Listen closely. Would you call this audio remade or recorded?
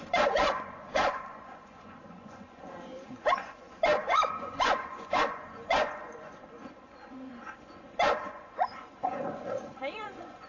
remade